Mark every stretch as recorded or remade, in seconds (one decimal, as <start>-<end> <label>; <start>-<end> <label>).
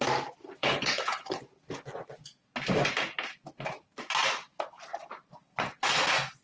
0.0-0.6 recorded; 0.6-1.4 remade; 1.4-6.4 recorded